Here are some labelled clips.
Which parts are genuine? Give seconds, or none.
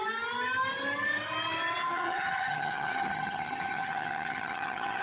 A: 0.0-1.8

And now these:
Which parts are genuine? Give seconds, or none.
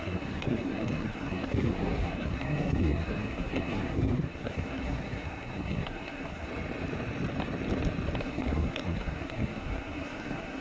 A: 6.5-8.2